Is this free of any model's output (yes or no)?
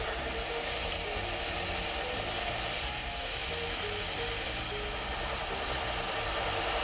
yes